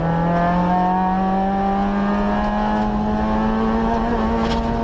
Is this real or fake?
real